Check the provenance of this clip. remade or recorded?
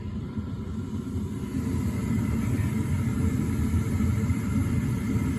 remade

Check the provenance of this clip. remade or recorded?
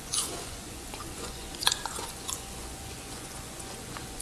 remade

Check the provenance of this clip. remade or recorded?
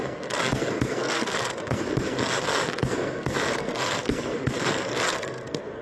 remade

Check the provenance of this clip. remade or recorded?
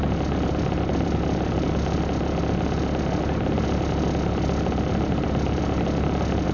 recorded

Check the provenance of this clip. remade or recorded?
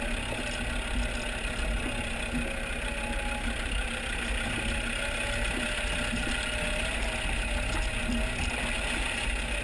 recorded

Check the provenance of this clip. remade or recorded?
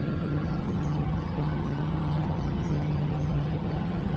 remade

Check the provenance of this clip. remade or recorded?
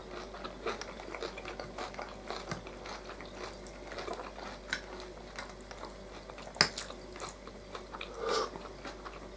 recorded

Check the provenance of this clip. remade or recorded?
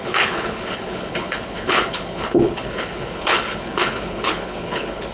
remade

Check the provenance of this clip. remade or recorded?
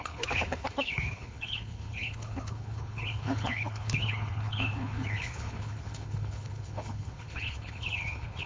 remade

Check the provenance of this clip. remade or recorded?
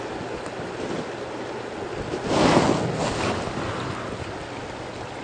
recorded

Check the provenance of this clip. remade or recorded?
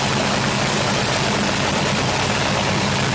recorded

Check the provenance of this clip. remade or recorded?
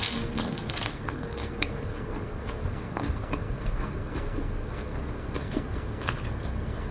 remade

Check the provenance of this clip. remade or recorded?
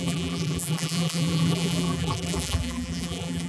remade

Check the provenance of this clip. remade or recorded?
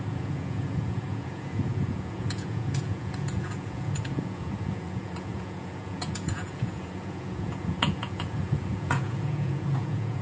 remade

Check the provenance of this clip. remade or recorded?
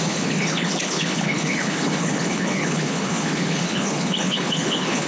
remade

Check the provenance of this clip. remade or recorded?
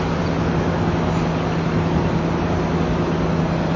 recorded